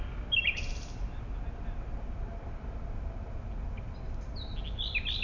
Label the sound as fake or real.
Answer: real